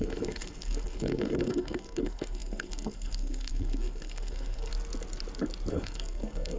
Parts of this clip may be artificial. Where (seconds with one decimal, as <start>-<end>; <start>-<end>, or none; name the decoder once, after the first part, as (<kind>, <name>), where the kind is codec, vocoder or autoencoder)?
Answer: 0.0-4.7 (codec, SNAC); 5.7-6.6